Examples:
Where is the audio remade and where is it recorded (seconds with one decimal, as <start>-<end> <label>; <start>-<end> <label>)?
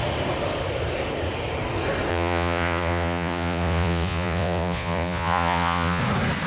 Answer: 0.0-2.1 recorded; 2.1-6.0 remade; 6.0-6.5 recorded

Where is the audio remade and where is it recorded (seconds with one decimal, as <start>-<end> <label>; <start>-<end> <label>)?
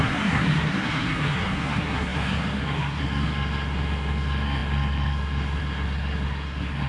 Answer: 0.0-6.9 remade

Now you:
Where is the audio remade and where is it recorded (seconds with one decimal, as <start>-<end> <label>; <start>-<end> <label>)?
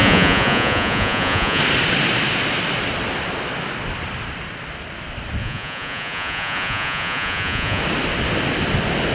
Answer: 0.0-1.6 remade; 1.6-5.4 recorded; 5.4-7.8 remade; 7.8-9.1 recorded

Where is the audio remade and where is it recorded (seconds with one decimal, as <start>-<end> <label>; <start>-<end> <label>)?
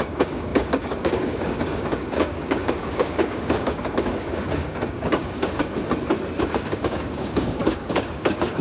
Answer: 0.0-5.8 remade; 5.8-6.4 recorded; 6.4-8.6 remade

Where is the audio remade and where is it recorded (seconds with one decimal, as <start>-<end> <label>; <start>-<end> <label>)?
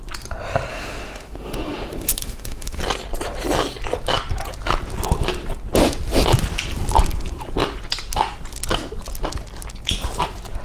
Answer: 0.0-0.7 recorded; 0.7-2.8 remade; 2.8-10.6 recorded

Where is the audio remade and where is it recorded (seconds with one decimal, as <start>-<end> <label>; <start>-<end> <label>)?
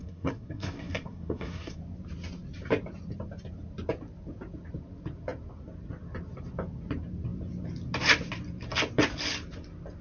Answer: 0.0-1.8 remade; 1.8-10.0 recorded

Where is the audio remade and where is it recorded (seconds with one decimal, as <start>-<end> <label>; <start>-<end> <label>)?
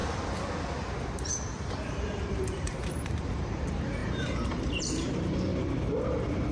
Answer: 0.0-2.3 recorded; 2.3-5.5 remade; 5.5-6.5 recorded